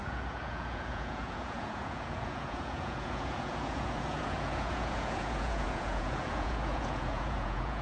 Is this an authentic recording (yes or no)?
no